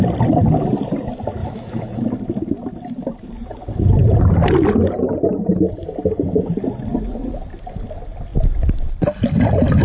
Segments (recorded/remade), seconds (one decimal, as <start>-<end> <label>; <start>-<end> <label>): 0.0-1.4 recorded; 1.4-2.0 remade; 2.0-9.8 recorded